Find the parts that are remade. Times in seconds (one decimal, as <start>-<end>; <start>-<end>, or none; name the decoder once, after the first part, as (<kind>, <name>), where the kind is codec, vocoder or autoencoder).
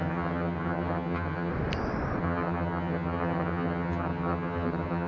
0.0-1.5 (vocoder, HiFi-GAN); 2.2-5.1